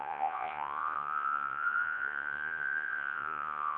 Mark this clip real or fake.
fake